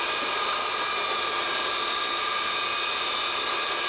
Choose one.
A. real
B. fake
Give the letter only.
A